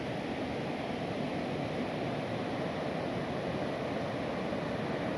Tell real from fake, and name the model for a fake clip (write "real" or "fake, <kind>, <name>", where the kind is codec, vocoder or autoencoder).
real